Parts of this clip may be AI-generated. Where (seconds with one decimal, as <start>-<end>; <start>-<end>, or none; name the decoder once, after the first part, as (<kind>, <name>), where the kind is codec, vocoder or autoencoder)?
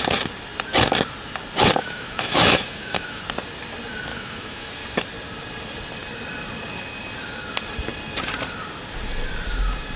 1.8-3.2 (autoencoder, DAC-VAE); 4.1-4.7